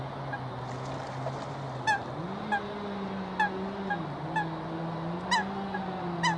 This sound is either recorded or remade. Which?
recorded